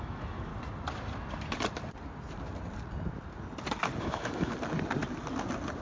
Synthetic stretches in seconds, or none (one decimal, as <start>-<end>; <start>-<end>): 0.0-0.5; 4.0-4.5